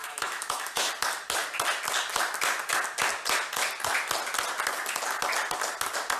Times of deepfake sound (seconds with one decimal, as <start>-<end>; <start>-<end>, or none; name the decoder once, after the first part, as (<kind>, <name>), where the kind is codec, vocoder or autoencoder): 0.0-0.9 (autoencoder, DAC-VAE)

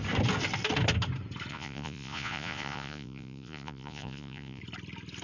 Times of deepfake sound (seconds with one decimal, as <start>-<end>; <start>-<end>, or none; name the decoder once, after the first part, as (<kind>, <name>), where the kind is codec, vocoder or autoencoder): 1.5-4.6 (vocoder, Vocos)

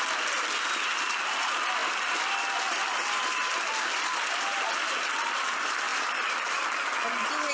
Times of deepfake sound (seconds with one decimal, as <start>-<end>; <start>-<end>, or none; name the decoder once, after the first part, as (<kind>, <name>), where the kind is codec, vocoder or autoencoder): none

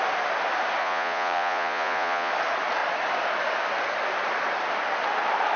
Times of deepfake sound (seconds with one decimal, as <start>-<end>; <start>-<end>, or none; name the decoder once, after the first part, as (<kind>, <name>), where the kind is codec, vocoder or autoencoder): 0.8-2.3 (vocoder, Vocos)

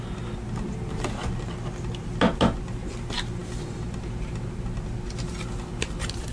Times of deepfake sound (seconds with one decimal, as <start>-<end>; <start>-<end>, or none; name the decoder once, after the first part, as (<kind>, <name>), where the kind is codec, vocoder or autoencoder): none

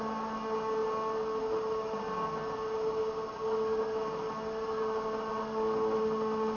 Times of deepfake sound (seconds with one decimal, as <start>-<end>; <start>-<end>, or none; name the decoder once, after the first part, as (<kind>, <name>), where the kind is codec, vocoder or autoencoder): none

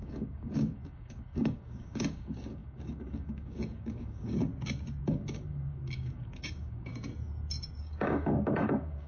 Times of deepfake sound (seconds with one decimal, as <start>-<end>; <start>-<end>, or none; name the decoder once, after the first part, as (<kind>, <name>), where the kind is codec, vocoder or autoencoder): 0.0-4.5 (codec, DAC); 5.0-6.9; 7.8-9.1